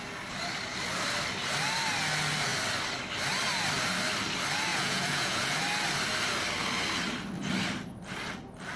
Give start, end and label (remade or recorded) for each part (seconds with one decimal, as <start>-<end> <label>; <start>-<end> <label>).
0.0-4.7 recorded; 4.7-5.6 remade; 5.6-8.8 recorded